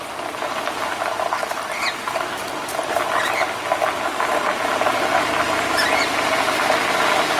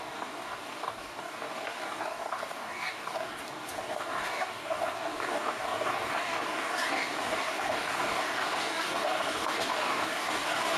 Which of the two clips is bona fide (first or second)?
first